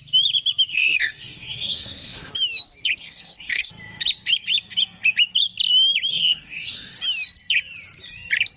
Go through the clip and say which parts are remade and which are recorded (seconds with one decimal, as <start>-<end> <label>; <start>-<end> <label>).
0.0-0.7 recorded; 0.7-2.3 remade; 2.3-3.0 recorded; 3.0-3.7 remade; 3.7-6.1 recorded; 6.1-7.0 remade; 7.0-8.6 recorded